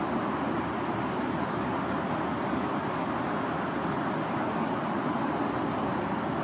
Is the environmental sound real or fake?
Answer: real